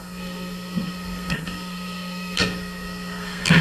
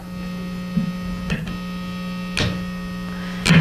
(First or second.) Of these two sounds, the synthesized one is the first